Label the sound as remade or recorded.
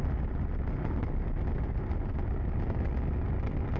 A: recorded